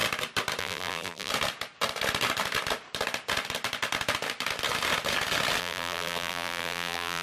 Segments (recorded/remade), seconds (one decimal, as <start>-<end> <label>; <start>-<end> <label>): 0.0-0.6 recorded; 0.6-1.3 remade; 1.3-5.6 recorded; 5.6-7.2 remade